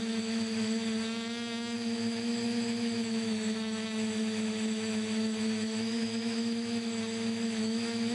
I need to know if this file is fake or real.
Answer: fake